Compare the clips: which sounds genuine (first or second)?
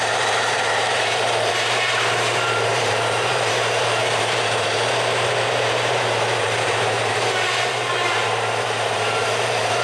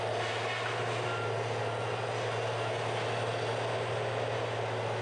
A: second